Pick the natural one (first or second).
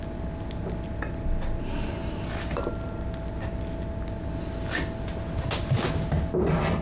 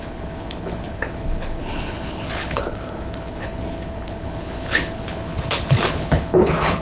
first